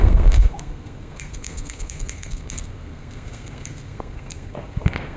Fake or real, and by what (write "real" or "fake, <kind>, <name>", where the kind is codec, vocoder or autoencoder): fake, codec, SNAC